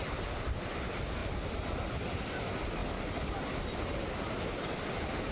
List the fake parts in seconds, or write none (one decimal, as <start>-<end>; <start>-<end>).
none